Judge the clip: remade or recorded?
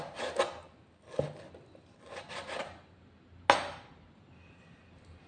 recorded